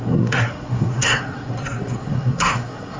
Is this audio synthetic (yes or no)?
yes